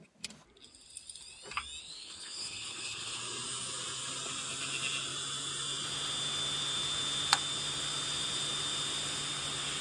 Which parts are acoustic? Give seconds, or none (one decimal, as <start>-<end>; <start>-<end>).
0.0-1.8; 3.2-9.8